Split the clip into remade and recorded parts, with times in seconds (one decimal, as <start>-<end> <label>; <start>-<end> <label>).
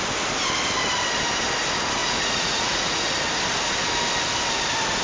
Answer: 0.0-2.0 recorded; 2.0-3.0 remade; 3.0-5.0 recorded